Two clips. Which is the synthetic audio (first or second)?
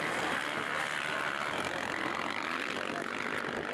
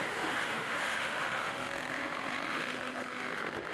second